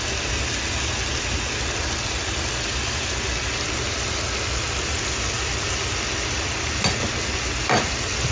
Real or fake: real